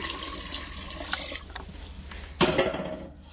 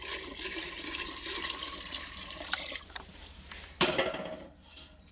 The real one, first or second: first